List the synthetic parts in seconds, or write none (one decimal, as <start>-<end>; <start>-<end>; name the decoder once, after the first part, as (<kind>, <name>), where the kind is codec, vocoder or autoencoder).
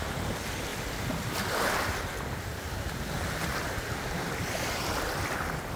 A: none